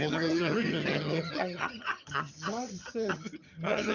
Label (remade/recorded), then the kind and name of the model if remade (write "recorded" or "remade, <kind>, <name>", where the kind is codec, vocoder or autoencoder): remade, vocoder, HiFi-GAN